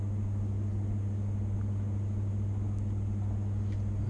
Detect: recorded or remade recorded